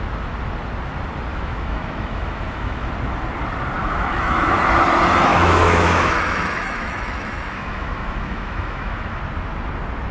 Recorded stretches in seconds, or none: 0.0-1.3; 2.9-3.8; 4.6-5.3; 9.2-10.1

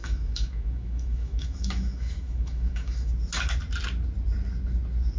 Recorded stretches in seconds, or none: 3.1-5.2

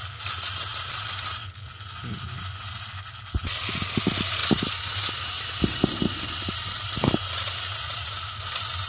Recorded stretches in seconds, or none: 0.0-8.9

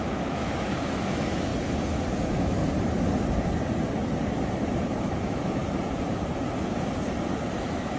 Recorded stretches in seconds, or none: 1.5-2.1; 2.6-5.0; 5.6-7.5

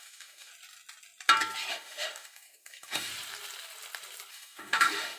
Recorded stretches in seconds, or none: 0.5-1.7; 3.1-4.3

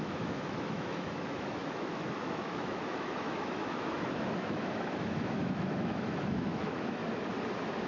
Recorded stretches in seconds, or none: 7.0-7.9

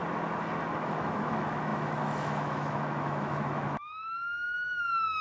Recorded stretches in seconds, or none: 0.0-0.7

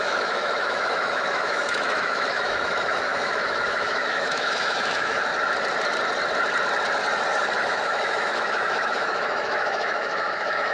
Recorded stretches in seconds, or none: 5.3-7.6